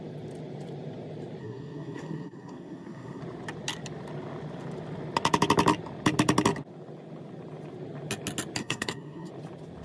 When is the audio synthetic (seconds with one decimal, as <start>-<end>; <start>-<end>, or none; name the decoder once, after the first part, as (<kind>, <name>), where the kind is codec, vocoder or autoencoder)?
1.4-3.2 (codec, SNAC); 8.6-9.3